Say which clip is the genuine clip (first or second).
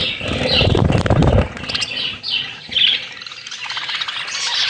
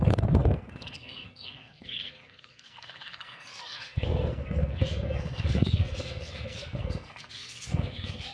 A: first